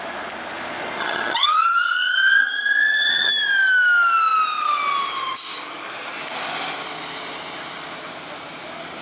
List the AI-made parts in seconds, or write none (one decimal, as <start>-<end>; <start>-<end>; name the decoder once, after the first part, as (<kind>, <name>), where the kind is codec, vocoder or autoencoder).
1.0-3.3 (vocoder, HiFi-GAN)